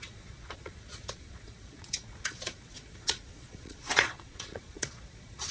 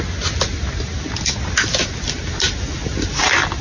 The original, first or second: second